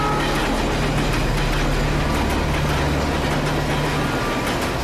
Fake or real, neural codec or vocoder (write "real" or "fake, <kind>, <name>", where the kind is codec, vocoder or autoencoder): real